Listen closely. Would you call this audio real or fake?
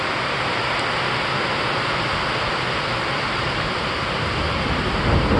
real